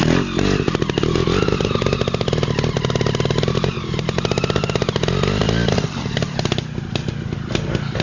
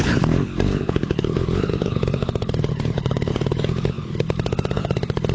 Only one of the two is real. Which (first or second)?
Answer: first